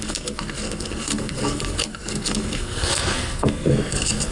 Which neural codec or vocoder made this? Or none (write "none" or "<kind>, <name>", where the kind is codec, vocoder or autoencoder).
codec, SNAC